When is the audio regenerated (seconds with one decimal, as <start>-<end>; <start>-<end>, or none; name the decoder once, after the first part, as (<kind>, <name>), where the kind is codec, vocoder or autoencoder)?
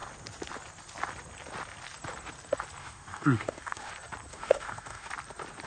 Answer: 2.8-3.9 (autoencoder, DAC-VAE); 4.3-5.1